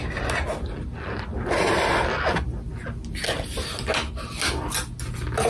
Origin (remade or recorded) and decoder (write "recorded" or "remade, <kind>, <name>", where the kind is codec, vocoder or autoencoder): recorded